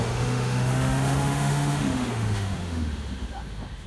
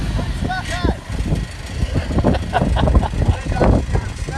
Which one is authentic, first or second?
second